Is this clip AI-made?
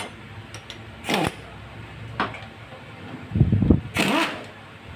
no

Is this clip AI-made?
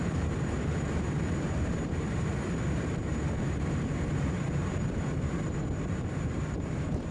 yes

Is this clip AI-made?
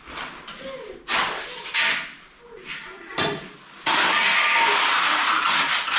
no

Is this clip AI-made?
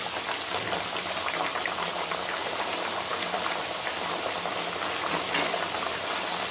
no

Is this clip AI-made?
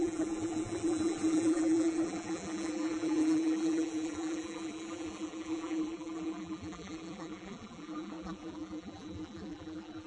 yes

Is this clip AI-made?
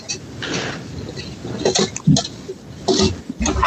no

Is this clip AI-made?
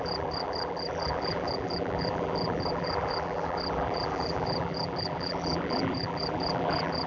yes